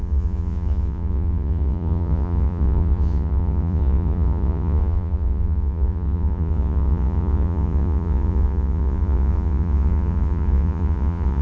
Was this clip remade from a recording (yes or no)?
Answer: yes